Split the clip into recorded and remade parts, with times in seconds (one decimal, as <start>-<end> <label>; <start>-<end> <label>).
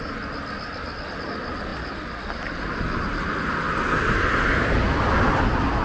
0.0-5.8 recorded